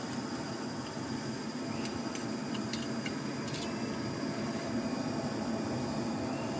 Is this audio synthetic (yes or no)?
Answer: no